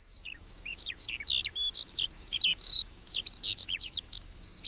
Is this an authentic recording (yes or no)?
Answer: no